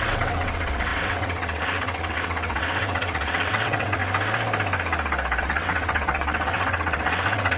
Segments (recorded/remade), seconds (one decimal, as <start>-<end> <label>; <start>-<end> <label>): 0.0-4.0 remade; 4.0-5.4 recorded; 5.4-7.6 remade